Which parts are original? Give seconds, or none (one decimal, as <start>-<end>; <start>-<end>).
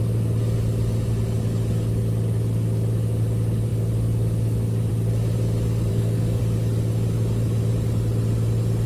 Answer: 0.0-5.9; 6.4-8.9